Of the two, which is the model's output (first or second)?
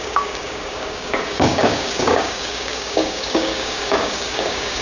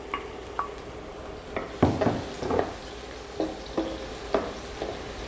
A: first